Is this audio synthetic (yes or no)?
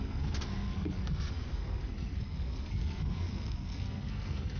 yes